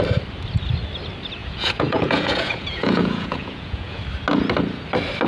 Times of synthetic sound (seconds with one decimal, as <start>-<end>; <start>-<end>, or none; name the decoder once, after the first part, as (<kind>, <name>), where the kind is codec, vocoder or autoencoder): 1.4-4.0 (vocoder, Vocos)